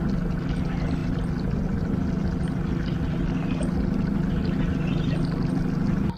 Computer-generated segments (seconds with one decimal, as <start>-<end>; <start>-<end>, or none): none